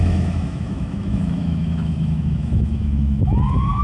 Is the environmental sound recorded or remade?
remade